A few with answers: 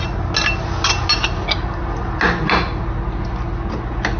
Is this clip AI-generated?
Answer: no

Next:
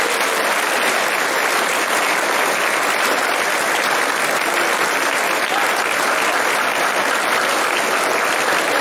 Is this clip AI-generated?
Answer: no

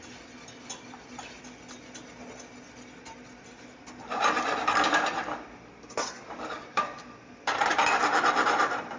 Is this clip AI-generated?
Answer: yes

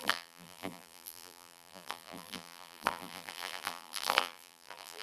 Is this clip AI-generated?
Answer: yes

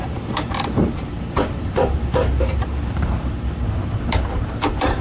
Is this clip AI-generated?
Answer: yes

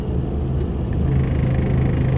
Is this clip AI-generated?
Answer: no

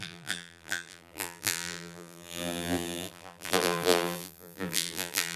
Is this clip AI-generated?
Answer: yes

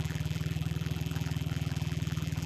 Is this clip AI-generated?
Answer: yes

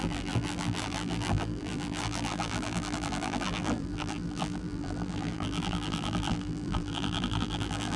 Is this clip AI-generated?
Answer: yes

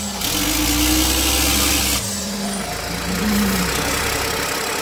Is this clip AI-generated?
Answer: no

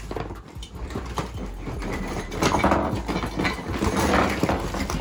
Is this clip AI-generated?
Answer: no